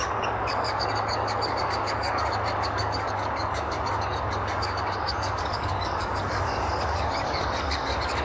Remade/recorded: remade